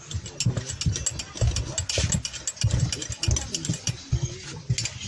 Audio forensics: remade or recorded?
recorded